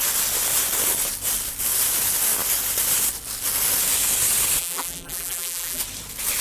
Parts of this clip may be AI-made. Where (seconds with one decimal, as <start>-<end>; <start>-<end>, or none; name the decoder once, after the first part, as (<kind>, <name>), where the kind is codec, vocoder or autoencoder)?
4.6-5.8 (vocoder, BigVGAN v2)